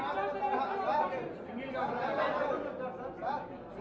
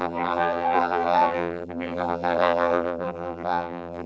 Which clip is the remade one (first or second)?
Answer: second